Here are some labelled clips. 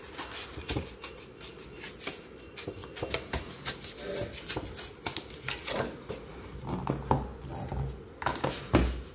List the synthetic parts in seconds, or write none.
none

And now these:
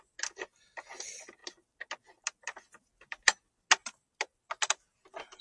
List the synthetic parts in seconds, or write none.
none

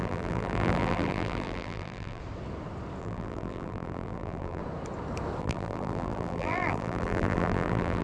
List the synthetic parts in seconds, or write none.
0.0-2.2 (vocoder, BigVGAN v2); 3.0-4.6; 5.4-8.0

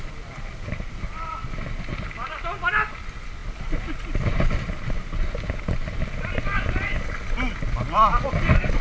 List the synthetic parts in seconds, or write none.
none

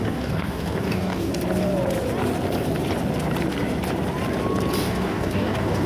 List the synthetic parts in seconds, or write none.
0.0-1.3 (codec, DAC); 4.8-5.9